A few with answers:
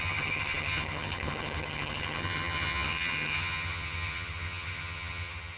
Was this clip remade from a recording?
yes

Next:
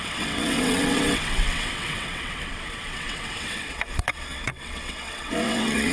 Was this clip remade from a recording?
yes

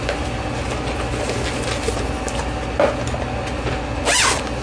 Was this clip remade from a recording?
no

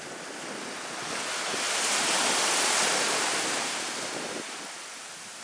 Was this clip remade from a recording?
no